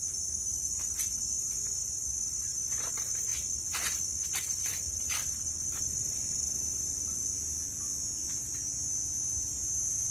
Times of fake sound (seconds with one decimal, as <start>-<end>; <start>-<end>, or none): 1.8-2.9; 9.2-10.1